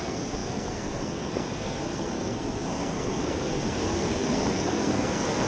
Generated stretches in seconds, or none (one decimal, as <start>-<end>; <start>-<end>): 0.0-5.5